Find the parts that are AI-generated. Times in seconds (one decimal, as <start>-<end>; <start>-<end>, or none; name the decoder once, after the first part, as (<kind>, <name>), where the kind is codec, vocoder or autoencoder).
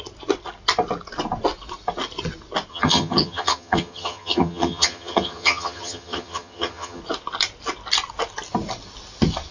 2.7-7.0 (vocoder, HiFi-GAN)